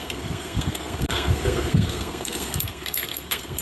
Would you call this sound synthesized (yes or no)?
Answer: yes